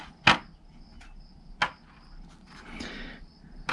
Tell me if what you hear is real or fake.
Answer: real